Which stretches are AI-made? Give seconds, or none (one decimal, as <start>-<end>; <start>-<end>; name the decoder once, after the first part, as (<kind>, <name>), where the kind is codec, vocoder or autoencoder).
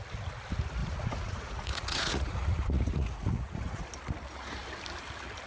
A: 0.8-3.8 (vocoder, Vocos)